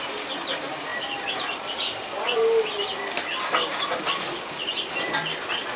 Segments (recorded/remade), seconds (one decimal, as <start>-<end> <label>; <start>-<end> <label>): 0.0-5.8 recorded